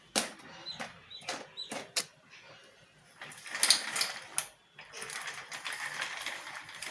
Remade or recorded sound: recorded